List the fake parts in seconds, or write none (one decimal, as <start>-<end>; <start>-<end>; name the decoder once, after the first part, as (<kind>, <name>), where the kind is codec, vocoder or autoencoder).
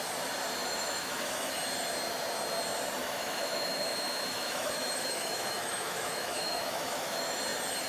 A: 0.6-1.5 (autoencoder, DAC-VAE); 3.0-7.4